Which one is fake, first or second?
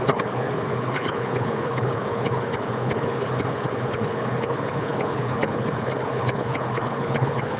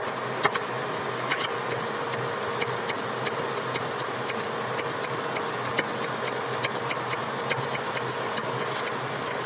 first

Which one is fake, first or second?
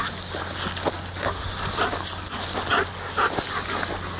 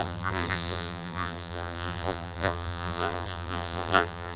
second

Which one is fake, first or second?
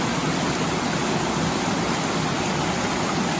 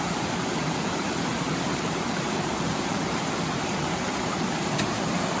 second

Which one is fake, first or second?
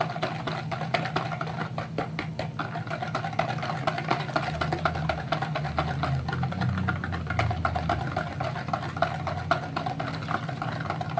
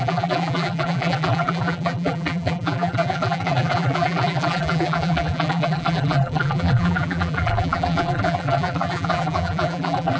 second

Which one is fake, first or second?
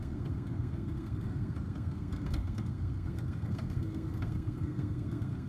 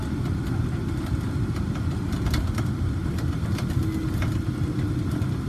first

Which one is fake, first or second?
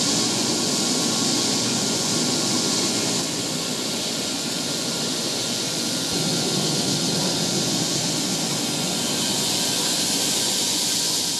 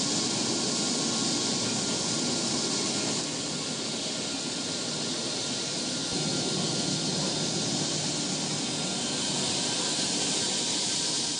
first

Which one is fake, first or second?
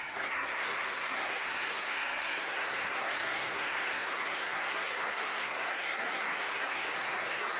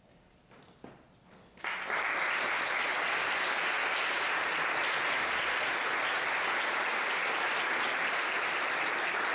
first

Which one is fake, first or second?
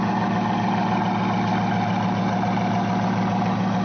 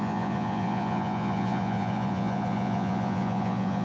second